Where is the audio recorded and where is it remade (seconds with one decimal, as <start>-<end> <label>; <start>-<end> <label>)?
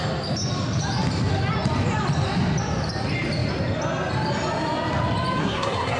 0.0-5.4 recorded; 5.4-6.0 remade